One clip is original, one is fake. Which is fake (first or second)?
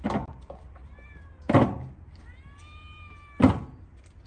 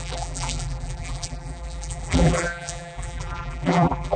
second